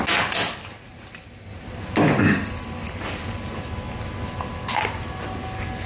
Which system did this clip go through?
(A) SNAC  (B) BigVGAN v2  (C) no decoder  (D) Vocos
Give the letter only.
C